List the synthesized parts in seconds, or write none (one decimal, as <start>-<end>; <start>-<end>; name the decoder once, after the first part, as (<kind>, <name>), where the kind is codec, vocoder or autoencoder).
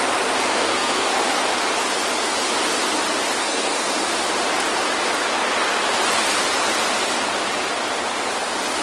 0.5-1.1 (codec, SNAC); 3.4-3.9